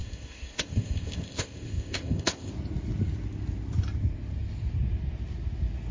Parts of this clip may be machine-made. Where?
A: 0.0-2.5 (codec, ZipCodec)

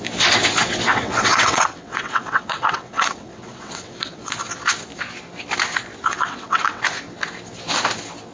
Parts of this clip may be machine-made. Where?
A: 0.9-4.3 (vocoder, WaveNeXt); 6.1-6.8

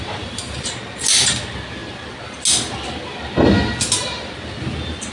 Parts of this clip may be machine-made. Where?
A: none